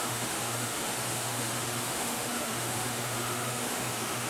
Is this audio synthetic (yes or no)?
yes